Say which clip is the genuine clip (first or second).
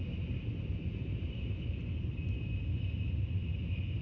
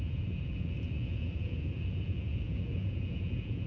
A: first